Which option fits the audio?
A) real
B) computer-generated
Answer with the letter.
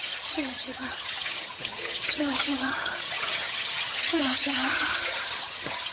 B